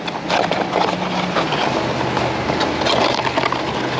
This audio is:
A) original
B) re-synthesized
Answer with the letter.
A